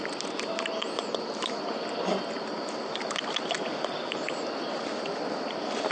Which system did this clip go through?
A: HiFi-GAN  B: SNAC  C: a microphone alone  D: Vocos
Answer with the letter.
C